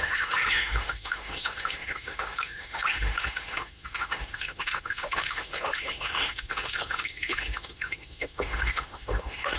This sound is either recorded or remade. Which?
remade